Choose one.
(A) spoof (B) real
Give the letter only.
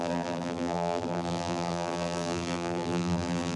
A